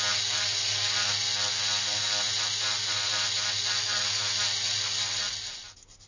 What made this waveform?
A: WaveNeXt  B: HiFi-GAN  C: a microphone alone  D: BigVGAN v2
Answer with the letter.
C